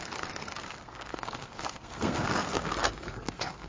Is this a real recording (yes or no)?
no